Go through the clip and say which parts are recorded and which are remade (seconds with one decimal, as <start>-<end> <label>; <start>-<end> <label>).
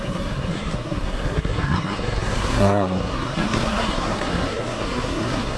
0.0-5.6 remade